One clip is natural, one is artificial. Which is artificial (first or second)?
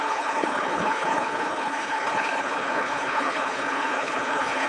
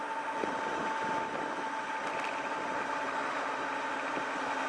first